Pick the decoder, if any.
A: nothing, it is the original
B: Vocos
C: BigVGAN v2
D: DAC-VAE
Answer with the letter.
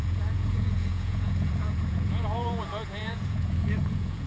B